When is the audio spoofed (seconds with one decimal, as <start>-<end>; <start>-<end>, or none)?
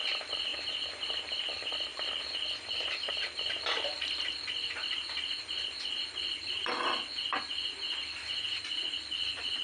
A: 1.9-7.0